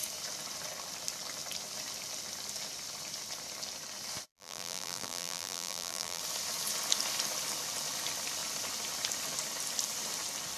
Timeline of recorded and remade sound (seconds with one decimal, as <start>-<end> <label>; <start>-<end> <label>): 0.0-4.3 recorded; 4.3-6.2 remade; 6.2-10.6 recorded